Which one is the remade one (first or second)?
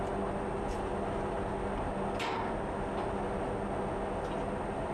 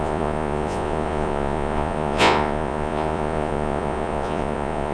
second